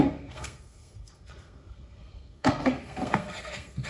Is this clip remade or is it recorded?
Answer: remade